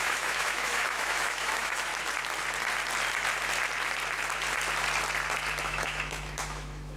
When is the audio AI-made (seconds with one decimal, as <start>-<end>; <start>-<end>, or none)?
0.0-1.9; 5.6-7.0